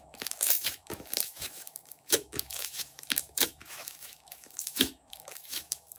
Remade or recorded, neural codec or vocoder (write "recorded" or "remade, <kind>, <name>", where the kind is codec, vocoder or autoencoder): remade, autoencoder, DAC-VAE